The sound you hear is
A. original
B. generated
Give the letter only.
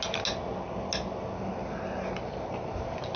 A